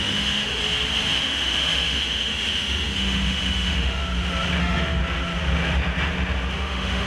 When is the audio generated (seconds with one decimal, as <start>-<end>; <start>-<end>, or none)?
0.0-0.6; 1.2-4.0; 4.6-5.0; 6.5-7.1